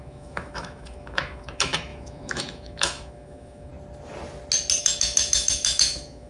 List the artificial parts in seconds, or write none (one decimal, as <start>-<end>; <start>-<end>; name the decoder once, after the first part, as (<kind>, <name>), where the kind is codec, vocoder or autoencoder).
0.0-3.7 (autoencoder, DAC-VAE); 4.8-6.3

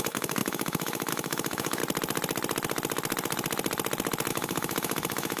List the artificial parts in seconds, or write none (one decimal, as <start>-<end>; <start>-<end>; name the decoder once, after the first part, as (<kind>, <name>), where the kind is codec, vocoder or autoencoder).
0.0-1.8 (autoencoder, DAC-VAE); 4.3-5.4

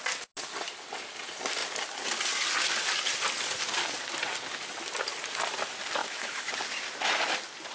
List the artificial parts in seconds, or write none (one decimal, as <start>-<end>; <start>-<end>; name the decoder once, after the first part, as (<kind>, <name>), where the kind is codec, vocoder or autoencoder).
6.0-6.5 (autoencoder, DAC-VAE)

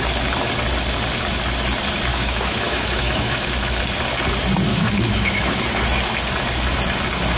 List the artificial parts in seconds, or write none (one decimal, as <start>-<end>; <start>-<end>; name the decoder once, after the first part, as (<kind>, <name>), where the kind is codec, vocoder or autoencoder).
2.1-3.8 (autoencoder, DAC-VAE); 4.7-5.6

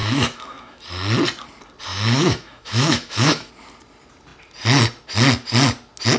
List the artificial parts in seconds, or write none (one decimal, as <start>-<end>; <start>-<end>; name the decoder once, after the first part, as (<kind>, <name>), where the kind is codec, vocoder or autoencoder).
0.0-0.8 (autoencoder, DAC-VAE); 1.9-3.5